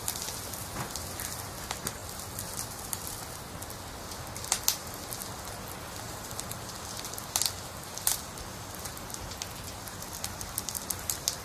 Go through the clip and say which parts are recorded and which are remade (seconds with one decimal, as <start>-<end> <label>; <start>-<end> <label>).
0.0-11.4 recorded